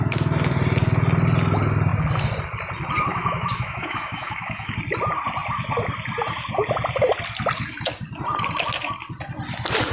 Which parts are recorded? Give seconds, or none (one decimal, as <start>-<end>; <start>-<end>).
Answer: 0.0-3.1; 4.7-9.9